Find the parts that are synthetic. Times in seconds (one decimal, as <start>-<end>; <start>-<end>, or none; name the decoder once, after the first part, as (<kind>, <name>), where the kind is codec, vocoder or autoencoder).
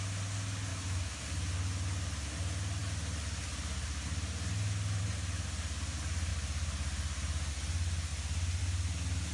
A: 0.7-1.2 (autoencoder, DAC-VAE)